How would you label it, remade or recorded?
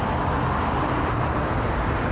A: recorded